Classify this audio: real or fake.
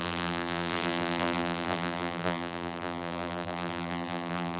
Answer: fake